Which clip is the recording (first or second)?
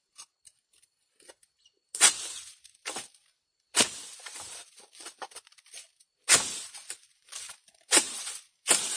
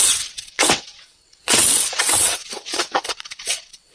first